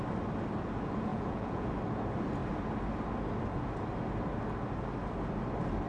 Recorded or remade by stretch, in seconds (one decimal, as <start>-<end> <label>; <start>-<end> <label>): 0.0-1.1 recorded; 1.1-1.7 remade; 1.7-5.9 recorded